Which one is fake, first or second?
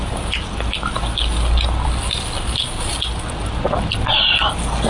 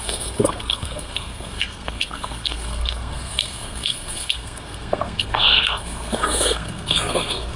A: second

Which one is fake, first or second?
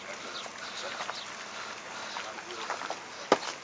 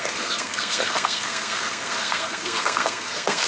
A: second